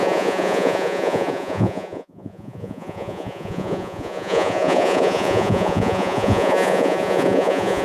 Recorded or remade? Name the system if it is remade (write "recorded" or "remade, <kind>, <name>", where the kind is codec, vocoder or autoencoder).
remade, vocoder, Vocos